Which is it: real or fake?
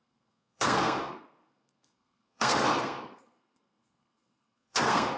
fake